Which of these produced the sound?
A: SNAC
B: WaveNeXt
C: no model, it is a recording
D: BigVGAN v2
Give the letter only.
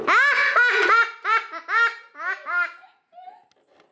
C